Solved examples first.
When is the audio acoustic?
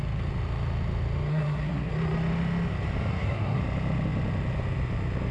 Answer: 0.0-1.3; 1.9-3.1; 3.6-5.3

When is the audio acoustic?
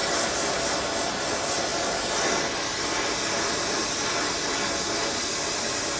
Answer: 0.0-6.0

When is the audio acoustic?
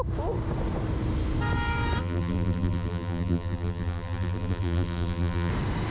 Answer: 0.0-2.0; 5.5-5.9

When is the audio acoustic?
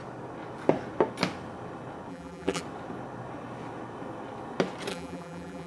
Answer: 0.0-2.1; 2.6-4.9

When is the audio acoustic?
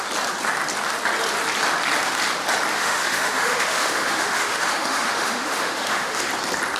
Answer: 0.0-2.7; 6.3-6.8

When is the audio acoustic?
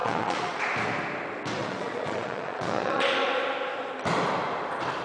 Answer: 0.6-1.6; 3.0-5.0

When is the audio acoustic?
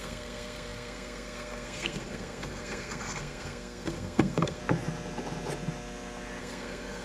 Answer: 4.6-6.4